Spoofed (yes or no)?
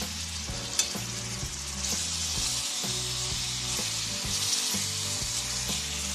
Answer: no